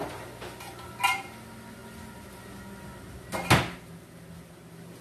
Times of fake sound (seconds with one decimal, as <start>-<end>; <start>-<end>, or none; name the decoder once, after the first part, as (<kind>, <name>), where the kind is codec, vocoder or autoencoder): none